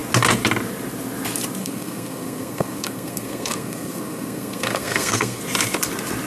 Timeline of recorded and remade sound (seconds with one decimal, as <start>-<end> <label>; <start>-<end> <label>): 0.0-1.6 recorded; 1.6-5.4 remade; 5.4-6.3 recorded